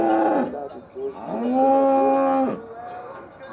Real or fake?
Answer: real